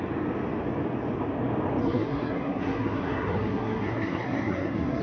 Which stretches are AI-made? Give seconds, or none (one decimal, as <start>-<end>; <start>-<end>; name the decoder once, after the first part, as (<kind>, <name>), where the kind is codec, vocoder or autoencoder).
1.8-5.0 (codec, SNAC)